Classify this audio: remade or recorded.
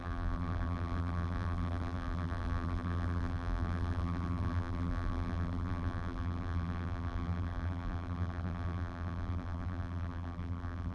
remade